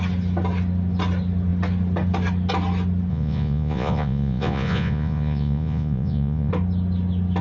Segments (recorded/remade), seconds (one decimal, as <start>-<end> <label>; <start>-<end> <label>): 0.0-3.1 recorded; 3.1-6.5 remade; 6.5-7.4 recorded